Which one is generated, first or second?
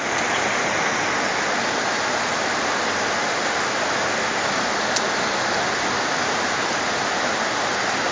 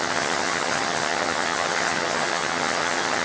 second